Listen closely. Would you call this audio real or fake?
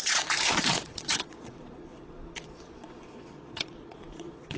fake